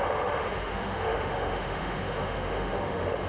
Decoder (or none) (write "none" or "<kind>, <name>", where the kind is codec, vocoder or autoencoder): autoencoder, DAC-VAE